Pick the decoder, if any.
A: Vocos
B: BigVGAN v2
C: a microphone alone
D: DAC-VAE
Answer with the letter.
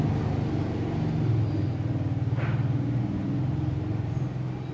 C